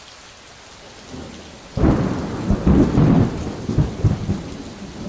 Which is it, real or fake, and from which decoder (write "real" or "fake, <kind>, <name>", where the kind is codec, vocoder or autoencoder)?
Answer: real